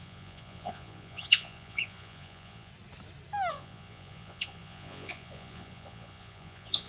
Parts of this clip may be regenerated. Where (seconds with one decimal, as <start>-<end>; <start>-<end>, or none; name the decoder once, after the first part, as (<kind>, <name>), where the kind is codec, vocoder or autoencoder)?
0.0-2.7 (vocoder, Vocos); 3.5-6.9